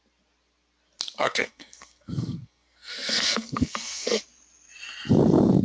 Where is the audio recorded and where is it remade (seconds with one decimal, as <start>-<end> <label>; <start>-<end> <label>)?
0.0-1.2 recorded; 1.2-4.2 remade; 4.2-5.6 recorded